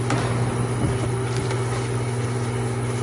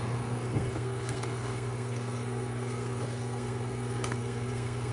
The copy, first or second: second